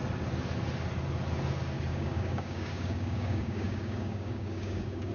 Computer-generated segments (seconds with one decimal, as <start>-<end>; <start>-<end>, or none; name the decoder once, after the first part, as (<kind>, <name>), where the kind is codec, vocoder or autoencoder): 1.9-5.1 (codec, DAC)